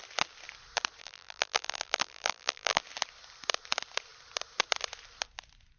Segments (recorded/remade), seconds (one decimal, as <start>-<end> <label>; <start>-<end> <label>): 0.0-1.0 recorded; 1.0-2.8 remade; 2.8-5.8 recorded